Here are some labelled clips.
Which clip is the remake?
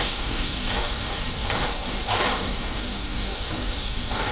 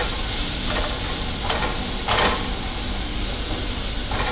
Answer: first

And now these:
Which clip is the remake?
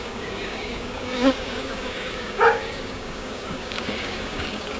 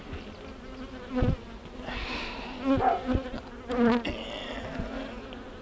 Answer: first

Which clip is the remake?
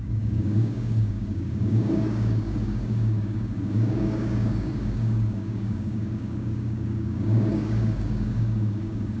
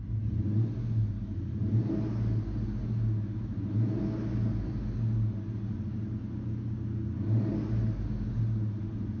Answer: first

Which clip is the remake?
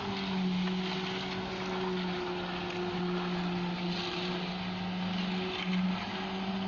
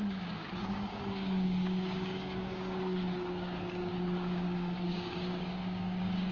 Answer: second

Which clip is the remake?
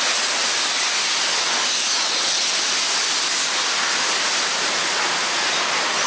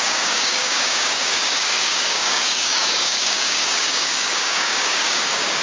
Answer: second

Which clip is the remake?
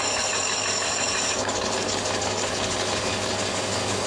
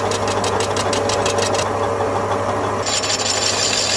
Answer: first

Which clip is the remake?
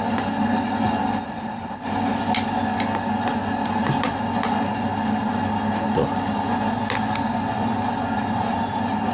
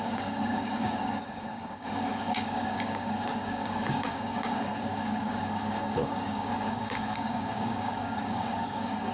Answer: second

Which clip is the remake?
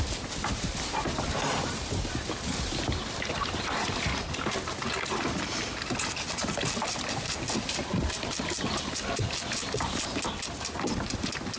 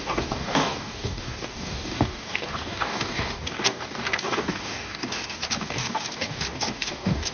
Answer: second